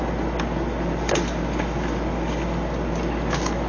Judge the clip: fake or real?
real